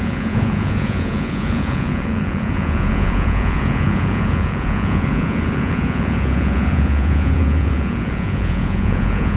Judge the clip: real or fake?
fake